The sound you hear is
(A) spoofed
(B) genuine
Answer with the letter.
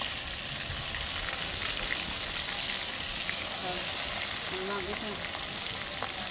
B